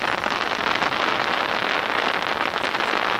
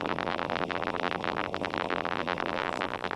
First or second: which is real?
first